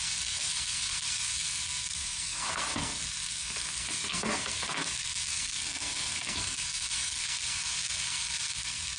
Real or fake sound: fake